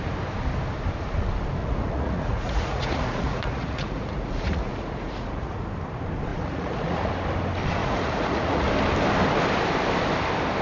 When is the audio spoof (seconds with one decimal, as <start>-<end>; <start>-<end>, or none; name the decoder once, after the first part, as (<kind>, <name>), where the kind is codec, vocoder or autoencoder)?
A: 1.6-5.7 (vocoder, Vocos); 6.3-7.1; 7.8-8.7